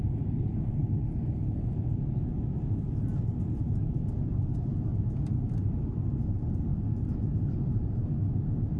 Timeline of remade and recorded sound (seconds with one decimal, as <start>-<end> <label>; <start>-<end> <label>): 0.0-8.8 recorded